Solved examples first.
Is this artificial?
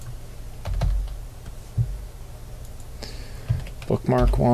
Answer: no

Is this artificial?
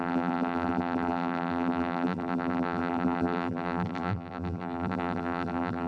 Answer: yes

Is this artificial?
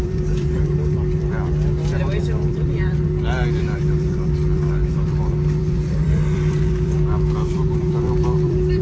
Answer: yes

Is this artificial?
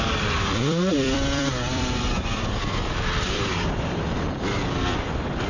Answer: yes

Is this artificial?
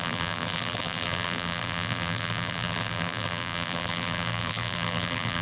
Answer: yes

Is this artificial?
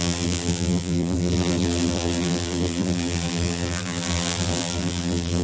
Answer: yes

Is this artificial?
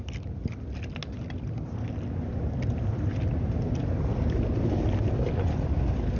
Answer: no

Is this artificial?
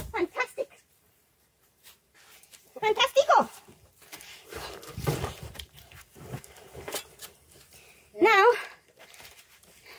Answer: yes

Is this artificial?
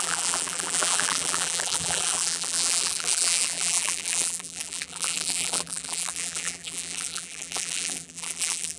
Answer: yes